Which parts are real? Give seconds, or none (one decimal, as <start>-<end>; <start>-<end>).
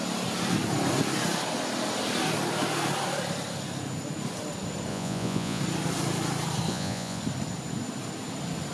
0.0-4.9; 5.6-6.7; 7.2-8.7